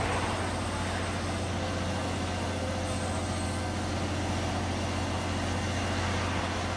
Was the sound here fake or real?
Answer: real